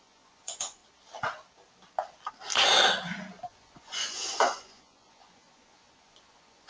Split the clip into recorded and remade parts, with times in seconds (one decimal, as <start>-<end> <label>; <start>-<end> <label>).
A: 0.0-0.8 remade; 0.8-3.4 recorded; 3.4-6.7 remade